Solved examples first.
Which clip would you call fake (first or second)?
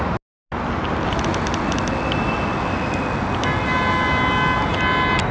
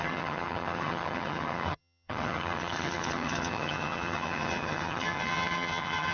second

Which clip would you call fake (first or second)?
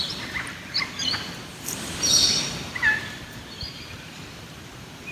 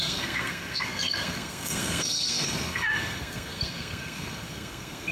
second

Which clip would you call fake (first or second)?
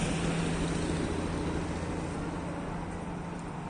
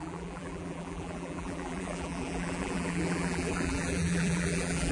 second